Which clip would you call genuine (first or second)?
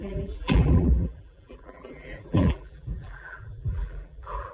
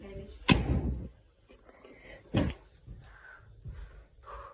second